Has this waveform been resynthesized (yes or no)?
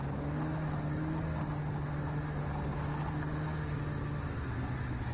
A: no